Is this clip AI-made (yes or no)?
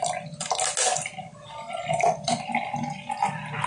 no